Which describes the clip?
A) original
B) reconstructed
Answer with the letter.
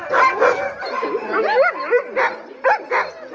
A